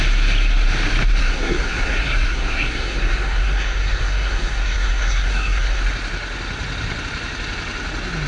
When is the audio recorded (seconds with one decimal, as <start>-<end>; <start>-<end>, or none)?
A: 0.0-1.2; 5.8-8.3

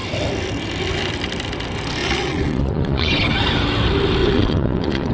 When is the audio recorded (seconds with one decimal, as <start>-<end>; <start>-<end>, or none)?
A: 0.0-2.0; 3.1-4.2

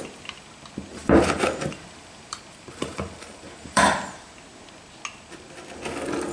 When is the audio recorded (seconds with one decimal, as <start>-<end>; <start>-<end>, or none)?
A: 0.0-0.9; 4.3-6.3